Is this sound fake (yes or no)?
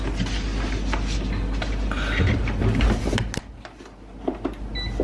no